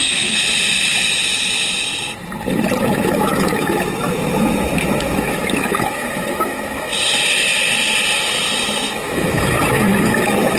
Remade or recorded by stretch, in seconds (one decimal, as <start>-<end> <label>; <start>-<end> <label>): 0.0-0.4 remade; 0.4-2.8 recorded; 2.8-6.9 remade; 6.9-8.9 recorded; 8.9-10.6 remade